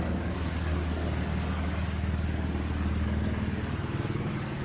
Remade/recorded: remade